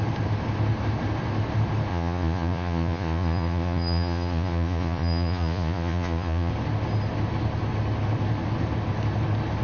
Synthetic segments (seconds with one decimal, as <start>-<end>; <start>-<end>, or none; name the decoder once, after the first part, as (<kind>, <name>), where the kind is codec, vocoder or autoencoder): 1.9-6.5 (vocoder, Vocos)